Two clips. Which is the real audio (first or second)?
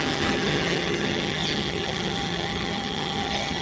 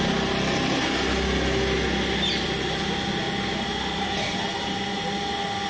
second